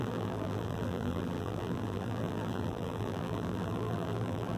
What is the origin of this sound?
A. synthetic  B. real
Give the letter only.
A